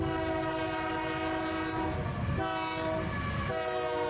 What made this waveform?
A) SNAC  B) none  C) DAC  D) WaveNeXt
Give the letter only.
B